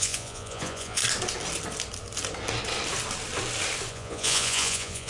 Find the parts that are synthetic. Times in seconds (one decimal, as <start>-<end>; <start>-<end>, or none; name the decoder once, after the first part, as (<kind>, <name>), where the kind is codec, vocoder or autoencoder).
0.0-1.0 (vocoder, Vocos); 3.9-5.1